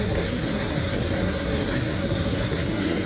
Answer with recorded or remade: remade